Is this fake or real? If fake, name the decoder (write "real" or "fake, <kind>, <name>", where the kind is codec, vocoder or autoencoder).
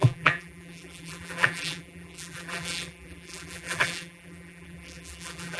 fake, vocoder, BigVGAN v2